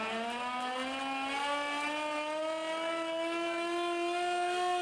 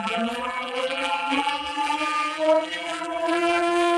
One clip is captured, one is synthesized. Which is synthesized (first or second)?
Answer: second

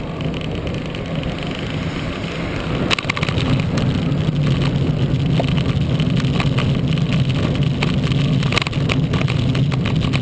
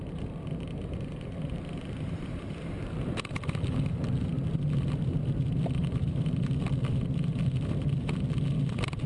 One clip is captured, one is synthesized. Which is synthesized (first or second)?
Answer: second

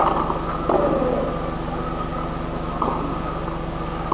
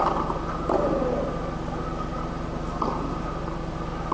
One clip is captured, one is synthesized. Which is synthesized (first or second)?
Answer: second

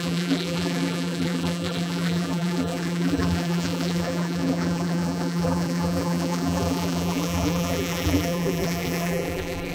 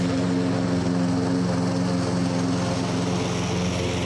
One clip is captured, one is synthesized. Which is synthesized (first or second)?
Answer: first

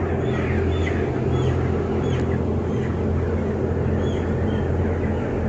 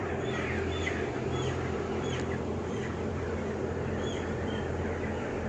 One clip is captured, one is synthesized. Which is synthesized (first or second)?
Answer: second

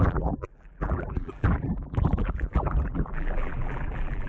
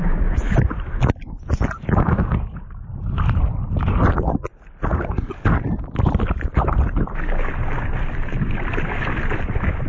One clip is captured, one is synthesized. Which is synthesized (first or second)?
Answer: first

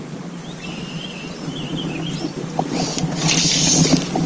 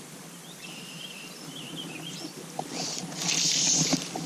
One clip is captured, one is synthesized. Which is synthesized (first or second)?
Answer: second